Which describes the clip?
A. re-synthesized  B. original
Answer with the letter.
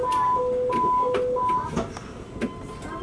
B